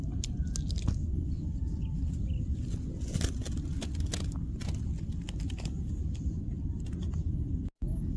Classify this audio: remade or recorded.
recorded